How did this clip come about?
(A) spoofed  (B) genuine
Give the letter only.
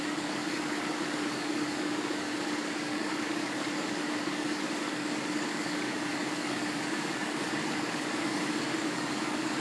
A